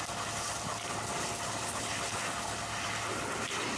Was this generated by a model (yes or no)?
no